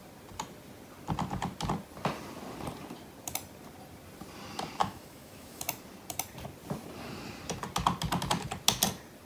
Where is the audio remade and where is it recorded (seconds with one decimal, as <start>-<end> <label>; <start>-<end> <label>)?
0.0-4.8 recorded; 4.8-5.6 remade; 5.6-9.2 recorded

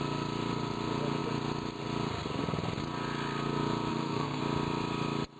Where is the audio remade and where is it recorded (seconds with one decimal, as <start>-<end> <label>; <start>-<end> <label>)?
0.0-3.9 recorded; 3.9-4.4 remade; 4.4-5.4 recorded

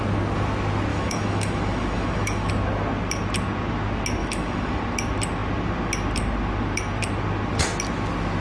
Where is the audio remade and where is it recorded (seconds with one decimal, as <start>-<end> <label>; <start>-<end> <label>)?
0.0-0.9 recorded; 0.9-2.5 remade; 2.5-4.2 recorded; 4.2-4.8 remade; 4.8-8.4 recorded

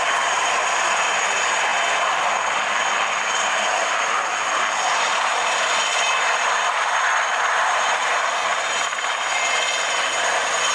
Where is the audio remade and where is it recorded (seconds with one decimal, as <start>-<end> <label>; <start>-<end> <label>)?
0.0-5.9 recorded; 5.9-6.5 remade; 6.5-8.5 recorded; 8.5-9.1 remade; 9.1-10.7 recorded

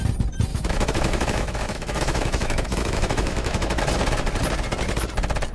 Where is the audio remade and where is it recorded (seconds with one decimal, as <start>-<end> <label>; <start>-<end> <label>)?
0.0-0.5 recorded; 0.5-3.8 remade; 3.8-5.5 recorded

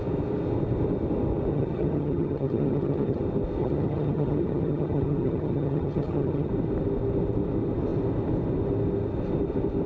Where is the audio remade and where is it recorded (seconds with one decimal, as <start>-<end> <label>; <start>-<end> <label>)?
0.0-1.5 recorded; 1.5-3.2 remade; 3.2-3.6 recorded; 3.6-6.5 remade; 6.5-9.9 recorded